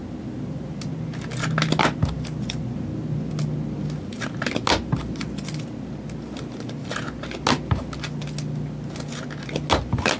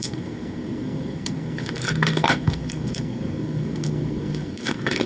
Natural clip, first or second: first